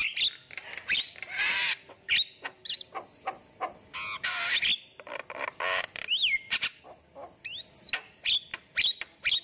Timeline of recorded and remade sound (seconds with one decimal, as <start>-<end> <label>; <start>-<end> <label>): 0.0-9.4 recorded